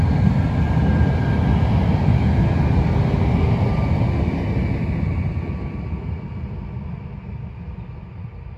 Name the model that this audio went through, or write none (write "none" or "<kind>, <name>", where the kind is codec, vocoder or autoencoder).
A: none